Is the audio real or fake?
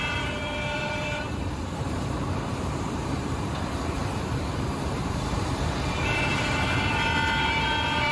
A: fake